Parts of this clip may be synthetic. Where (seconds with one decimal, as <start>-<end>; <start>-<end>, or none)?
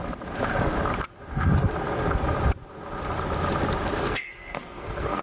4.0-5.2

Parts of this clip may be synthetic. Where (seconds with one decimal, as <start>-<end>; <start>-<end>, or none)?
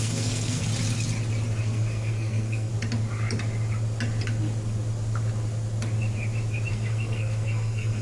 0.0-0.7; 1.6-2.7; 6.7-8.0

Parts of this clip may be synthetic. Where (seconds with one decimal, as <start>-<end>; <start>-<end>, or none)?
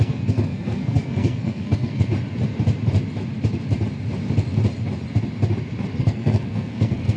0.0-2.1; 6.0-7.2